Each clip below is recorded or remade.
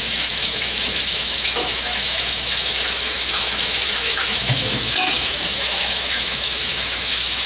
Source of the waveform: remade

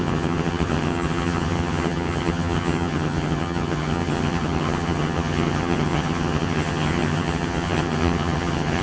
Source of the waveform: remade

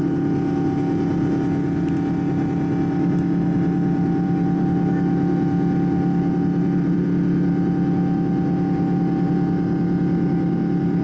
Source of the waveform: recorded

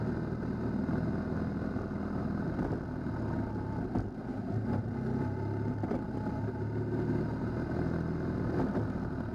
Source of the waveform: recorded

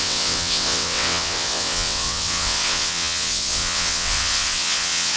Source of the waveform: remade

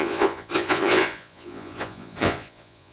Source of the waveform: remade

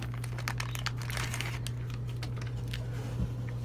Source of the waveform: recorded